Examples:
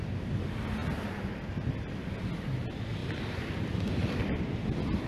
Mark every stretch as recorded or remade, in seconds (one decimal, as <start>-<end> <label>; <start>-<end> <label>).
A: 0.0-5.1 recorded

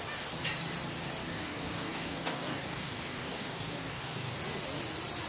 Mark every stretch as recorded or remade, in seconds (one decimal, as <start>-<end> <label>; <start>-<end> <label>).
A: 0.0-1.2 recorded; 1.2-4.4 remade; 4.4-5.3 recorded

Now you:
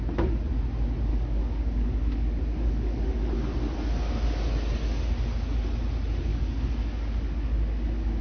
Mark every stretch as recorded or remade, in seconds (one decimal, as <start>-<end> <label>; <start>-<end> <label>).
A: 0.0-1.1 recorded; 1.1-3.3 remade; 3.3-6.3 recorded; 6.3-8.2 remade

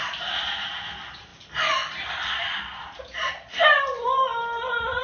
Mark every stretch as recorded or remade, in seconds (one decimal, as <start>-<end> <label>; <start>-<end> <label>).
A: 0.0-5.0 recorded

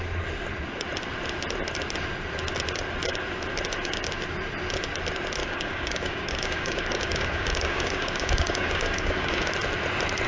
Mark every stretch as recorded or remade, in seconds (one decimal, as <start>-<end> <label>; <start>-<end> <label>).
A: 0.0-5.4 recorded; 5.4-9.5 remade; 9.5-10.3 recorded

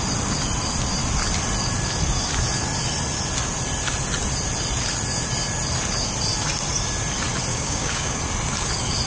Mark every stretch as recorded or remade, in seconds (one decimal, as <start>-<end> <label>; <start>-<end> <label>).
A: 0.0-7.5 recorded; 7.5-8.2 remade; 8.2-9.1 recorded

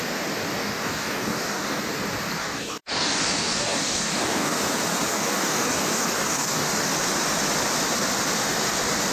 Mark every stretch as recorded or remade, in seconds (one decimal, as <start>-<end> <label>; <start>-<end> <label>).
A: 0.0-0.6 recorded; 0.6-1.8 remade; 1.8-2.4 recorded; 2.4-4.6 remade; 4.6-5.1 recorded; 5.1-6.9 remade; 6.9-9.1 recorded

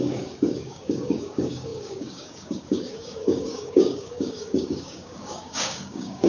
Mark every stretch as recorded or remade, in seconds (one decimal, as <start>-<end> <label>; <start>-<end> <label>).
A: 0.0-6.3 remade